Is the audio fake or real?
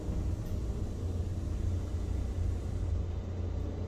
real